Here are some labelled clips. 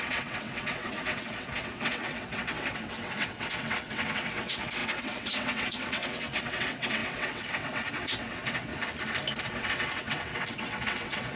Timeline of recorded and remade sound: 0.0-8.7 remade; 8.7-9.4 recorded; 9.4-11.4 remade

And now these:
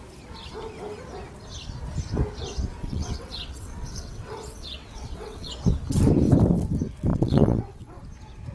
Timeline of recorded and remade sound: 0.0-2.8 recorded; 2.8-5.5 remade; 5.5-7.1 recorded; 7.1-8.0 remade; 8.0-8.5 recorded

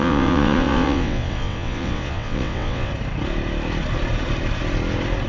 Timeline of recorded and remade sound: 0.0-2.9 remade; 2.9-5.3 recorded

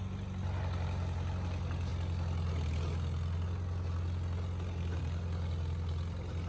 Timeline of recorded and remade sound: 0.0-6.5 recorded